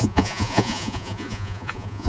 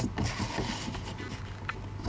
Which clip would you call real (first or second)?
second